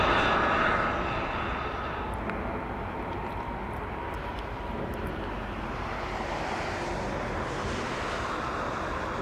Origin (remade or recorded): recorded